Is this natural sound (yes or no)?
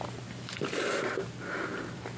yes